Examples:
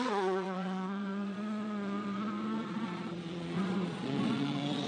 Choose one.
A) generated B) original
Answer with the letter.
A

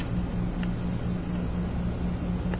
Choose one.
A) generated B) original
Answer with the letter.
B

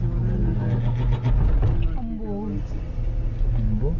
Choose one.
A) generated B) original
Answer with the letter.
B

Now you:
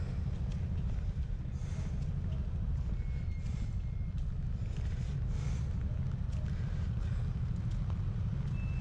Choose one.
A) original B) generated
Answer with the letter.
A